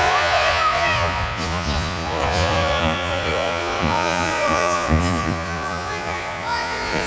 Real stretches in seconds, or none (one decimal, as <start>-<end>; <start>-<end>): none

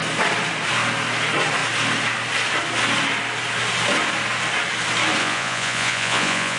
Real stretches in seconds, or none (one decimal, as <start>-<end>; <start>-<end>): 0.0-5.2